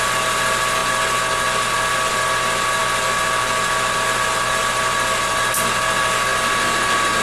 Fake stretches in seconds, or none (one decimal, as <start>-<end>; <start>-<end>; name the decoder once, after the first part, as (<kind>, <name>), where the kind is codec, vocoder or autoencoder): none